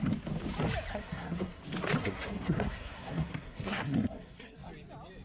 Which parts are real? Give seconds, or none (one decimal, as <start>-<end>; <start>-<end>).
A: 0.0-0.9; 1.6-2.0; 4.7-5.2